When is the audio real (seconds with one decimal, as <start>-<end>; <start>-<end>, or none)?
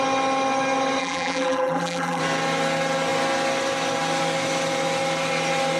0.0-1.0; 2.2-5.8